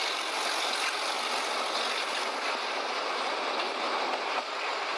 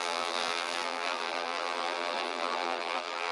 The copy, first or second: second